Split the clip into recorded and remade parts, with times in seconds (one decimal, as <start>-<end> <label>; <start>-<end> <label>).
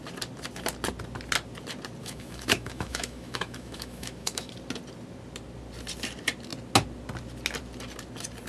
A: 0.0-2.0 recorded; 2.0-4.5 remade; 4.5-8.5 recorded